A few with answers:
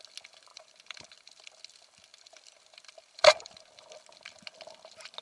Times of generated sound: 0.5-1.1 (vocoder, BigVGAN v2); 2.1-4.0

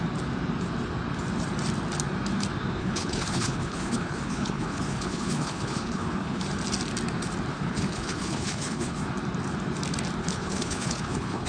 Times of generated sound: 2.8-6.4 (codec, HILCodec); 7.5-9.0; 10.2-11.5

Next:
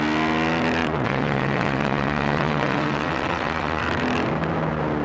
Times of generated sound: 0.8-3.8 (vocoder, WaveNeXt)

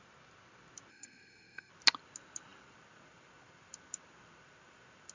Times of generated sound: 0.9-1.7 (codec, SNAC)